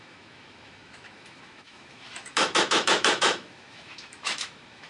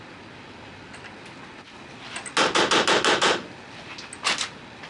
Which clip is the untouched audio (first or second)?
second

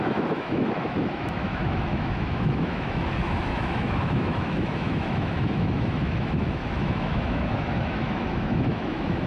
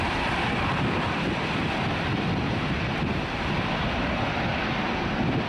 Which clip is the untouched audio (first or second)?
second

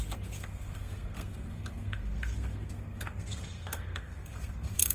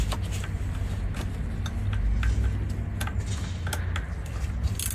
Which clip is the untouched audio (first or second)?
second